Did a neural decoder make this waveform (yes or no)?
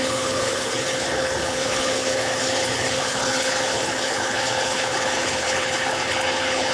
yes